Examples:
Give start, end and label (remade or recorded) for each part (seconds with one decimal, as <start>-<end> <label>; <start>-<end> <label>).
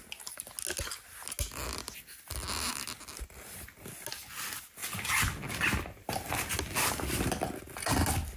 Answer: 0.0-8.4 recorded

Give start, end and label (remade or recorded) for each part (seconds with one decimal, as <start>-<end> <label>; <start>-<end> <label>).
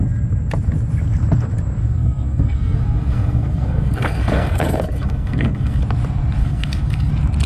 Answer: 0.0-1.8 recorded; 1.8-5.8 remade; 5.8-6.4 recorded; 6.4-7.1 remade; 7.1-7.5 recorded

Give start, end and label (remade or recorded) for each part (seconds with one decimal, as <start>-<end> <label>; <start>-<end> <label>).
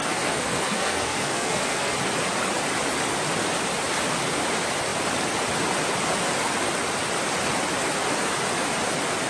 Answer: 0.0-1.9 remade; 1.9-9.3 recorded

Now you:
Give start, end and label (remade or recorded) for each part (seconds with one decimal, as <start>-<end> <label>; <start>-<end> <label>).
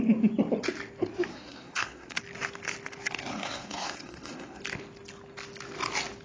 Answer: 0.0-1.3 recorded; 1.3-2.2 remade; 2.2-3.3 recorded; 3.3-4.6 remade; 4.6-6.2 recorded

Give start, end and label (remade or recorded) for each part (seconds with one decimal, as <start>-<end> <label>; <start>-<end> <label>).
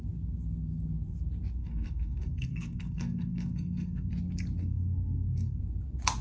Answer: 0.0-1.6 recorded; 1.6-4.1 remade; 4.1-4.6 recorded; 4.6-5.6 remade; 5.6-6.2 recorded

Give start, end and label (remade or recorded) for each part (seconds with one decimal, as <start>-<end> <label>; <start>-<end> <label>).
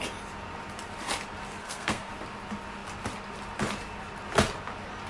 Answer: 0.0-1.6 recorded; 1.6-2.1 remade; 2.1-5.1 recorded